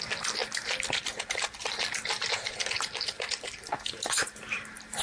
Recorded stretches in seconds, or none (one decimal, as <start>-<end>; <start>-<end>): 0.0-5.0